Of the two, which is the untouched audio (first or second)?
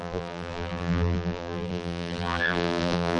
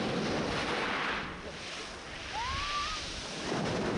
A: second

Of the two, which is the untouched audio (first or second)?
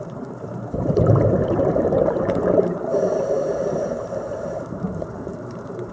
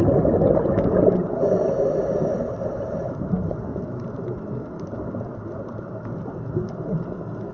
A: second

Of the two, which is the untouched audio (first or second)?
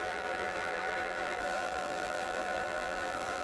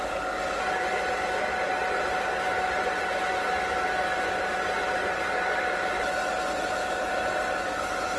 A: second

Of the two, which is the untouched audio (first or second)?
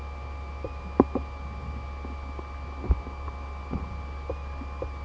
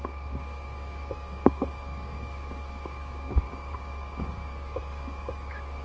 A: first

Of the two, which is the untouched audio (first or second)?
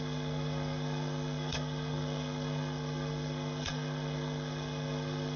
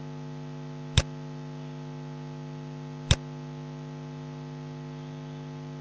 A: second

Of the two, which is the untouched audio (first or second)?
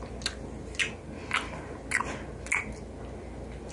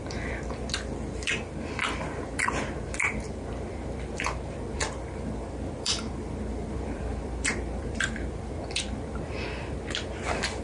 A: first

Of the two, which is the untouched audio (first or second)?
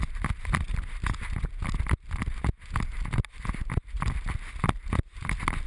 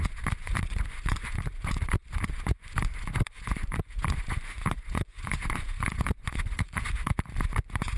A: first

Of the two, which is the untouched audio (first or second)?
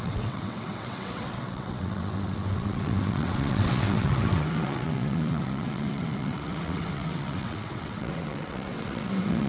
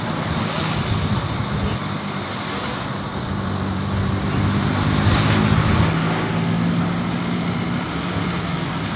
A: second